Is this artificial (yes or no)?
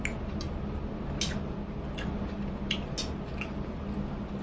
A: no